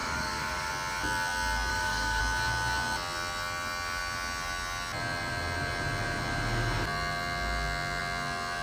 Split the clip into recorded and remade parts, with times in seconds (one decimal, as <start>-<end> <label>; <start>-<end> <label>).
0.0-0.7 remade; 0.7-1.7 recorded; 1.7-2.2 remade; 2.2-8.6 recorded